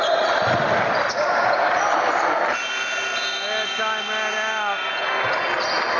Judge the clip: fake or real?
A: real